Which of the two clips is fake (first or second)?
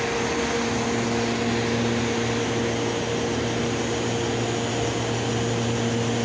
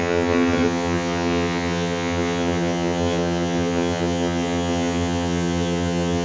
second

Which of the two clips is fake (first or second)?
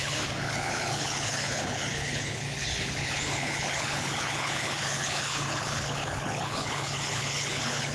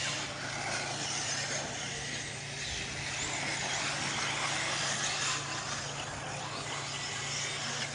first